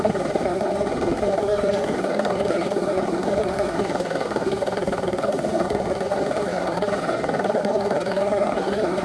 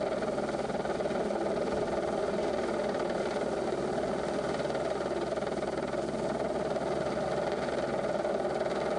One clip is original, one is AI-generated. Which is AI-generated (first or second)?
first